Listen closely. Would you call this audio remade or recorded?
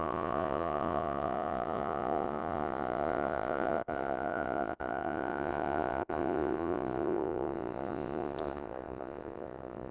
remade